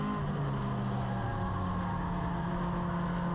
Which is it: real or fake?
real